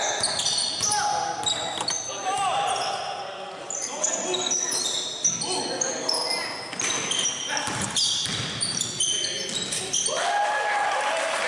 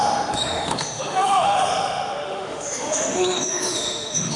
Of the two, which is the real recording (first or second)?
first